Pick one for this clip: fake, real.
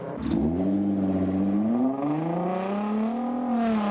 real